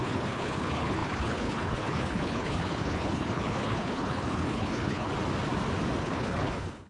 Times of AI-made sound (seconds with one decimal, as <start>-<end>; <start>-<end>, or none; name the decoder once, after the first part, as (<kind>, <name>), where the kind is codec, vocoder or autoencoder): 0.0-5.1 (codec, HILCodec); 6.0-6.9